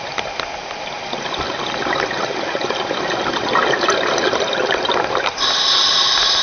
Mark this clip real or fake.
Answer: real